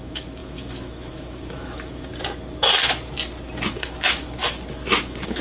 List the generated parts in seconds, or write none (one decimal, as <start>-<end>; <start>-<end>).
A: 0.0-2.1; 3.7-4.4; 5.0-5.4